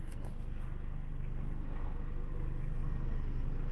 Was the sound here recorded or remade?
remade